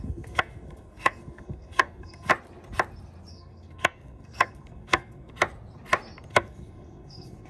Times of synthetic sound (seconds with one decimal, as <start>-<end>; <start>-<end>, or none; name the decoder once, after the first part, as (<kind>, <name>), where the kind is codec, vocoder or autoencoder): 0.0-2.3 (codec, SNAC); 3.3-5.3; 6.3-7.5

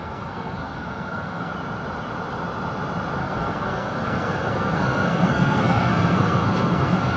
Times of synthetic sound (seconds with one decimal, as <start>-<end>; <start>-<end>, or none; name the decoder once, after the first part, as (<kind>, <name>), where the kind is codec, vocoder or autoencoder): 0.0-1.5 (codec, SNAC); 3.2-7.2

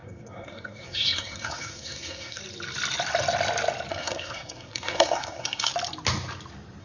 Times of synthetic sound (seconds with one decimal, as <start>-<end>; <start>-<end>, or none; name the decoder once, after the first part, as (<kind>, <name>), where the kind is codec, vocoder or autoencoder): 0.0-2.4 (codec, SNAC); 3.9-5.7

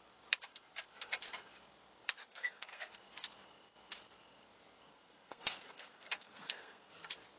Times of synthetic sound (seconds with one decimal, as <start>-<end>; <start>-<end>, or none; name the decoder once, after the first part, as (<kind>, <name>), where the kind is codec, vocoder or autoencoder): 2.2-2.9 (codec, SNAC); 4.9-6.9

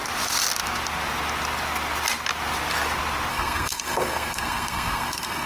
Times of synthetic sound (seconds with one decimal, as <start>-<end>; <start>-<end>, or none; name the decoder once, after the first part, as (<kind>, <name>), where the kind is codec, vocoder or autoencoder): 3.3-5.5 (codec, SNAC)